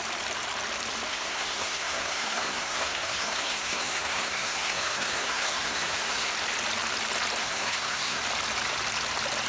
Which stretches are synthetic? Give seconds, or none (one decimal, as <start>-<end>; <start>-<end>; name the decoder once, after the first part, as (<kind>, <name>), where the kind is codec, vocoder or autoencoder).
1.1-6.3 (codec, SNAC); 7.4-8.2